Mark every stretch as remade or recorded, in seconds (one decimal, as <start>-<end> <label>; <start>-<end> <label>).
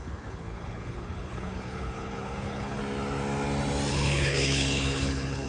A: 0.0-2.8 remade; 2.8-3.9 recorded; 3.9-5.5 remade